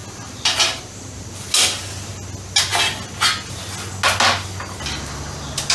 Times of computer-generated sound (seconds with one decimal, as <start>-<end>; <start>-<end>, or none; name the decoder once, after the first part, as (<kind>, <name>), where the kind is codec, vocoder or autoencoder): none